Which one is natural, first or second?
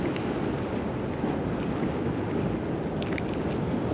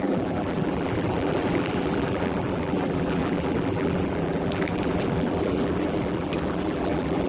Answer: first